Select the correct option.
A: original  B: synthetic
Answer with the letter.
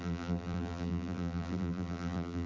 B